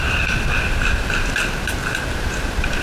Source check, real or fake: real